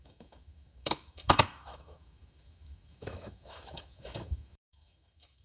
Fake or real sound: fake